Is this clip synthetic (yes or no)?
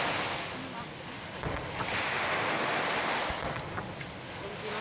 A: no